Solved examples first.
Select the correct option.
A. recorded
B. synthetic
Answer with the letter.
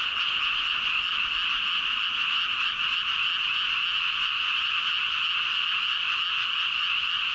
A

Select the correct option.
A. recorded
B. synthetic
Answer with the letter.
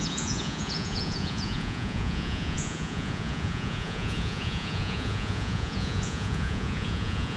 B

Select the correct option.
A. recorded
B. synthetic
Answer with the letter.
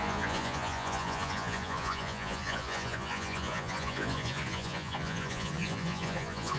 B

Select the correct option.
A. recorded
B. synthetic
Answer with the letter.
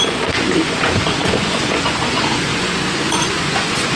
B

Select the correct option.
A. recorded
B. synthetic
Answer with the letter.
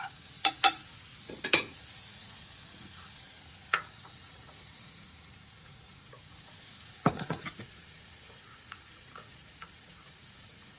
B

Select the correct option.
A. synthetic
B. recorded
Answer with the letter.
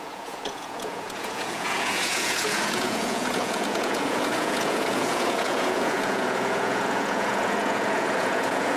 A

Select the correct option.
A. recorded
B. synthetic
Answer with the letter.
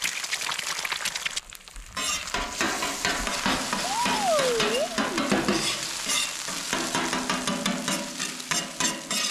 A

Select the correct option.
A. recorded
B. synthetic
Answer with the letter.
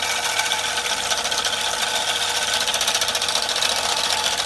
A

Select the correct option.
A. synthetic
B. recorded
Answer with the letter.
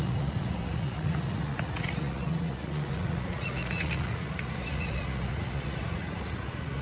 A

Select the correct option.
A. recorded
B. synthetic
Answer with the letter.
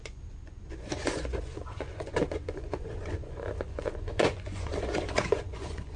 B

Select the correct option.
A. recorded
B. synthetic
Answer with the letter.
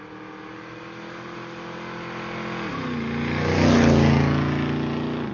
A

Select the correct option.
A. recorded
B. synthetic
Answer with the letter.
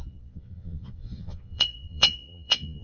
B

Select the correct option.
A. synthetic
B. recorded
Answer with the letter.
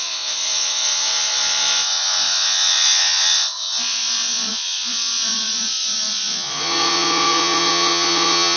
A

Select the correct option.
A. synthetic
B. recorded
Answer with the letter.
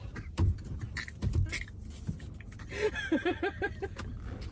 B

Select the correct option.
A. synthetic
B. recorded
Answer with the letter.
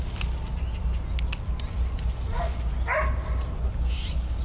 B